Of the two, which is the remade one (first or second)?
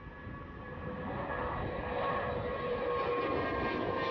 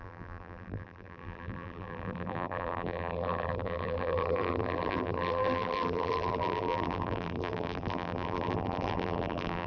second